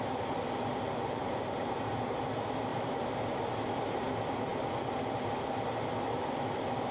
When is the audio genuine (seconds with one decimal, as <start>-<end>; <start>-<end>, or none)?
0.0-1.2; 1.9-2.7; 4.1-6.9